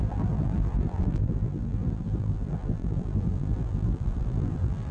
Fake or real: fake